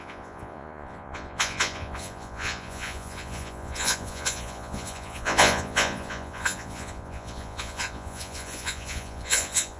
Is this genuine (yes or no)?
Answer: no